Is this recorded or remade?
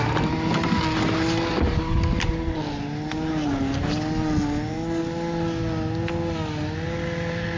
recorded